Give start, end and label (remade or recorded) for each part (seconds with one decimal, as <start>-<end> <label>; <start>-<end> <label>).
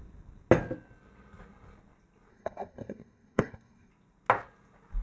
0.0-2.3 recorded; 2.3-3.9 remade; 3.9-5.0 recorded